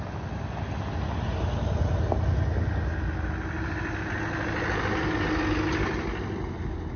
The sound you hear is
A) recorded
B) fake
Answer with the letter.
A